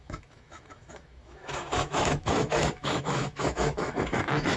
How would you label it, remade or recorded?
remade